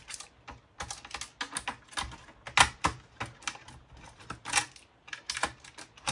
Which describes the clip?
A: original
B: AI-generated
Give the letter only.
A